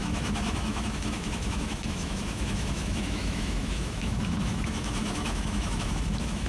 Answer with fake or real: fake